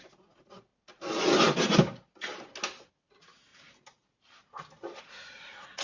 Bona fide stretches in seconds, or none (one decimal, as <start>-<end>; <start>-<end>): 0.7-2.9; 3.5-5.0